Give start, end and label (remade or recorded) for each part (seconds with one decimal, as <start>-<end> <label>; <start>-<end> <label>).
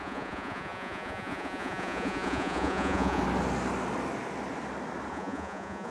0.0-3.2 remade; 3.2-5.1 recorded; 5.1-5.9 remade